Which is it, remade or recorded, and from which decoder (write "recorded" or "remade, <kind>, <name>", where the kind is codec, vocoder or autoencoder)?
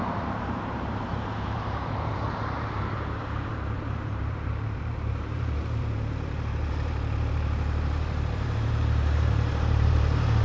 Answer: remade, vocoder, BigVGAN v2